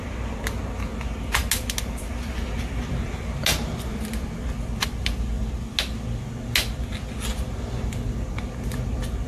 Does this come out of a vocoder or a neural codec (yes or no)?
no